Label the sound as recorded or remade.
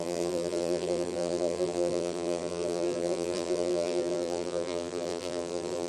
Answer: remade